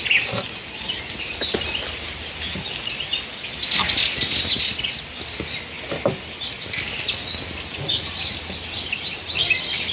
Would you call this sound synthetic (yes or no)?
no